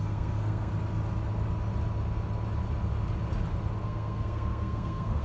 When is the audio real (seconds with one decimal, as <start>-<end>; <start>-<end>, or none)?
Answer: 0.7-3.8